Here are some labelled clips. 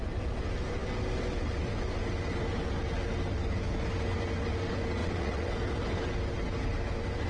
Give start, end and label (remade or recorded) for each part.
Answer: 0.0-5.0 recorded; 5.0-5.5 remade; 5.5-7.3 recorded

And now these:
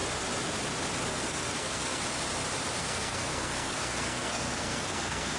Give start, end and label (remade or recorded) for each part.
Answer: 0.0-1.1 recorded; 1.1-2.0 remade; 2.0-2.8 recorded; 2.8-5.4 remade

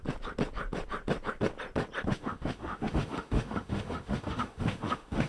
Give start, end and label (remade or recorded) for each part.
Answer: 0.0-2.1 recorded; 2.1-5.3 remade

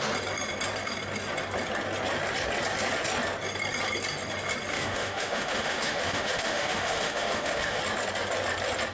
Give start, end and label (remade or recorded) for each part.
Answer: 0.0-4.7 recorded; 4.7-7.8 remade; 7.8-8.9 recorded

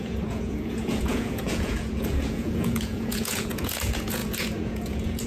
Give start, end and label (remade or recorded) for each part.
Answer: 0.0-5.3 remade